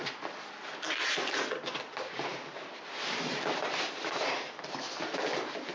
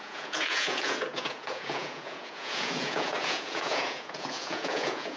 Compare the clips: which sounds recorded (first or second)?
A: first